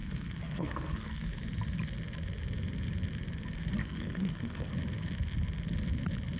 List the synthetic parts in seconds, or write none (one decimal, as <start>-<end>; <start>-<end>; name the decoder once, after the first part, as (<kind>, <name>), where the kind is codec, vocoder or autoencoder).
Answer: 0.0-1.3 (codec, SNAC); 3.8-4.7